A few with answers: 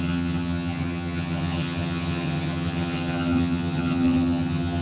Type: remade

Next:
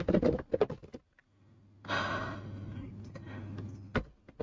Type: recorded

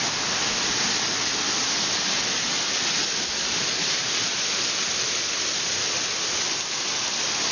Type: recorded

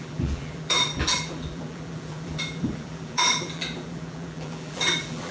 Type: remade